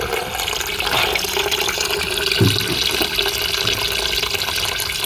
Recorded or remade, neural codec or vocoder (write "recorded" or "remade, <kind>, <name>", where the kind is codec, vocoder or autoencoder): recorded